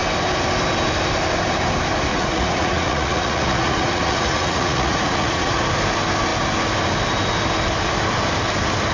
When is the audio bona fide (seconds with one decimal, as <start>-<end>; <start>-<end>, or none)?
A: 0.0-2.1; 5.6-8.9